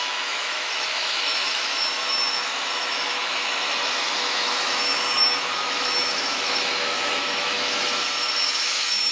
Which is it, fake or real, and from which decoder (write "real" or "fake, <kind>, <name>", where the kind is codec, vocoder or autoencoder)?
fake, autoencoder, DAC-VAE